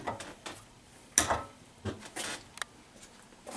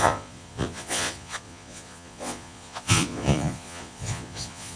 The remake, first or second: second